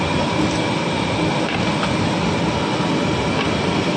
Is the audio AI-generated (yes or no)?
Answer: no